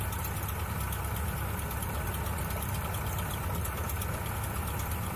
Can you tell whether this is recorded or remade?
recorded